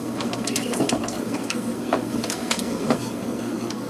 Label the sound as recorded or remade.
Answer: remade